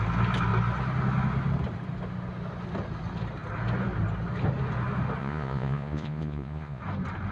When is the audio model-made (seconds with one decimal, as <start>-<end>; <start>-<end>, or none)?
5.2-6.8